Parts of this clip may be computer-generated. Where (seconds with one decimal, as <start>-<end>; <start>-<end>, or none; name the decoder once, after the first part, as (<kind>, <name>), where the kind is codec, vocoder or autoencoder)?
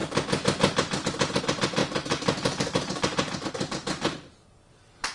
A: 1.8-3.5 (vocoder, BigVGAN v2)